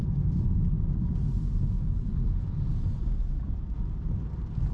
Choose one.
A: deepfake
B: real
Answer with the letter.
A